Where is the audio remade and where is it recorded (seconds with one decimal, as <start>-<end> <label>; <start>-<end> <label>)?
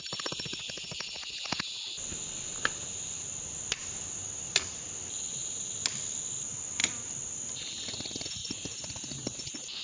0.0-9.8 recorded